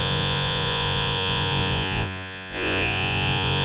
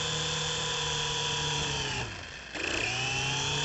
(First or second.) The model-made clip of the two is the first